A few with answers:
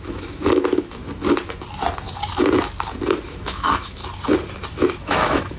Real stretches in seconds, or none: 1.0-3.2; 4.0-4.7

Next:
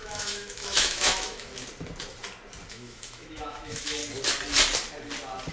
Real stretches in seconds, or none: 1.5-2.7; 4.0-5.5